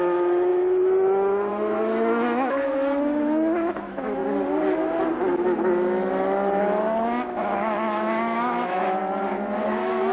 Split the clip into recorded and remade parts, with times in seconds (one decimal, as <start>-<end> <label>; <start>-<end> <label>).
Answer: 0.0-4.2 remade; 4.2-6.6 recorded; 6.6-9.0 remade; 9.0-9.6 recorded; 9.6-10.1 remade